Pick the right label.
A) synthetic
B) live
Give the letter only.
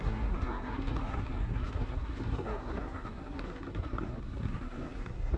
A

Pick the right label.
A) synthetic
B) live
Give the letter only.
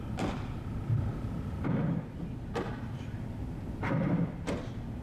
B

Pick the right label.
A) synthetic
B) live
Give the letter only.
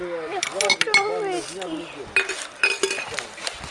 B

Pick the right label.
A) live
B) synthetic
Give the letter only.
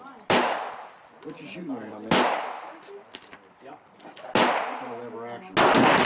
A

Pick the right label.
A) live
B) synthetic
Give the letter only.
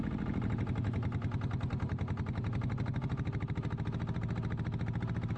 A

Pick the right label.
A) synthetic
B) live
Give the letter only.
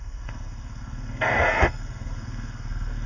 A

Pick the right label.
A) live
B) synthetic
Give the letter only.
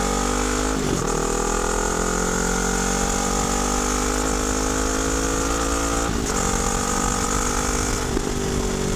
A